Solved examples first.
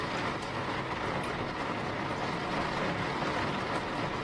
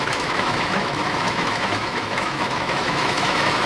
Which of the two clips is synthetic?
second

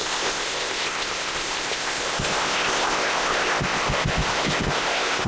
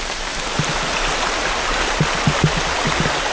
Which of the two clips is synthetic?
first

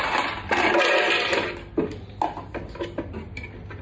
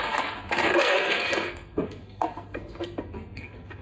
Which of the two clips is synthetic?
second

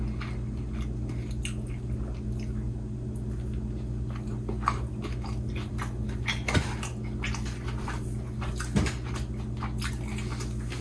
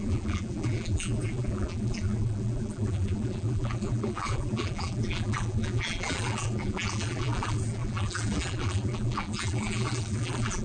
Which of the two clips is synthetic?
second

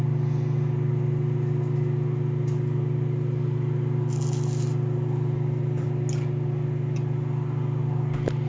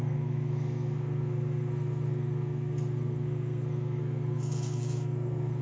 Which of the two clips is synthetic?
second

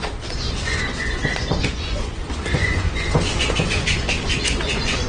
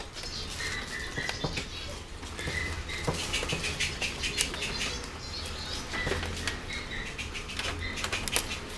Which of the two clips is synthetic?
first